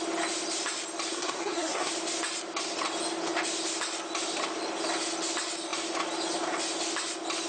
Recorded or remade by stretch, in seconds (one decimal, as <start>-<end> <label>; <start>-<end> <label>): 0.0-1.1 recorded; 1.1-1.9 remade; 1.9-7.5 recorded